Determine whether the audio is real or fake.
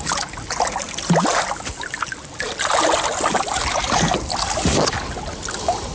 real